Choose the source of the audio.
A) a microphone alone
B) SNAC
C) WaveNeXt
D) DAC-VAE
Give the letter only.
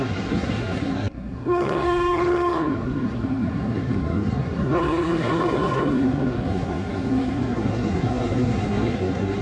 B